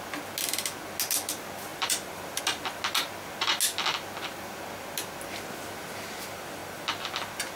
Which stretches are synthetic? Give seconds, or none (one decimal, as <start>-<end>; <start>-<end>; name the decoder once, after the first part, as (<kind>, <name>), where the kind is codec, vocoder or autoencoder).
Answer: 1.7-2.4 (vocoder, BigVGAN v2)